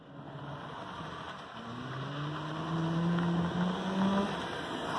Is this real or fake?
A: real